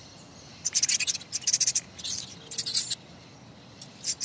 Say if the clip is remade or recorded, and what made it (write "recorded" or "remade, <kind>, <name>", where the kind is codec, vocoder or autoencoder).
recorded